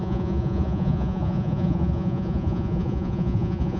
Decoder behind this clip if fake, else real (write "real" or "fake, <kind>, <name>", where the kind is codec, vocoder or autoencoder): fake, vocoder, Vocos